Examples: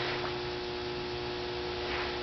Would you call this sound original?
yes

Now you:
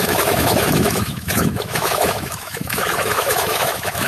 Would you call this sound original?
no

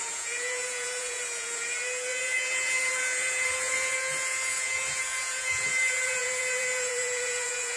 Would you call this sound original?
no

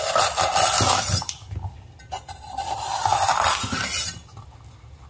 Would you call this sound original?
yes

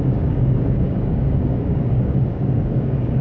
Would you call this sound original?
no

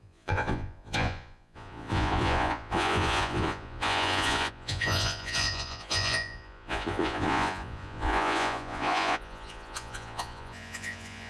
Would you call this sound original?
no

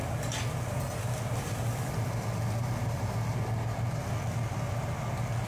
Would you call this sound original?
yes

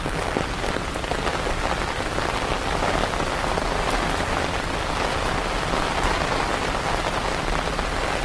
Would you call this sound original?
yes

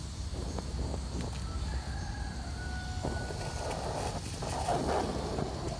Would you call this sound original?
yes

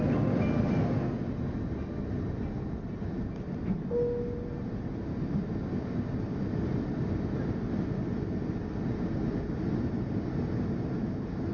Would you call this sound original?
yes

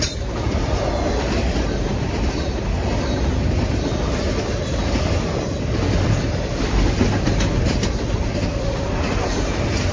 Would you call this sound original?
yes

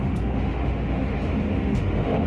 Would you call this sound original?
no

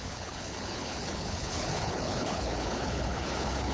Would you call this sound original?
no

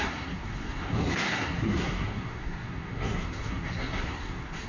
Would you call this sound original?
no